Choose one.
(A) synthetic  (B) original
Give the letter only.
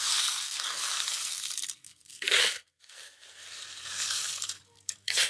A